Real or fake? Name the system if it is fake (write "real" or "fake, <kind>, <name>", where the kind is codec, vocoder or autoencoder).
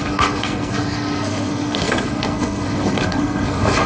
fake, codec, SNAC